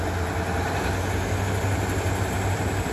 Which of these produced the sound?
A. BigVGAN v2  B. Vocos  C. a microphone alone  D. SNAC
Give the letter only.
C